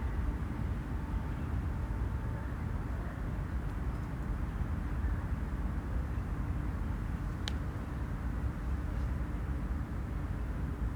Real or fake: real